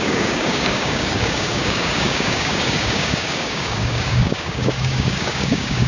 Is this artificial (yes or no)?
yes